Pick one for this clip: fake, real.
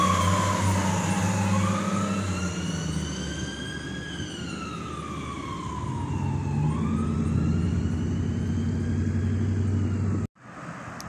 real